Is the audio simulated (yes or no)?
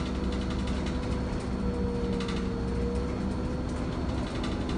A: no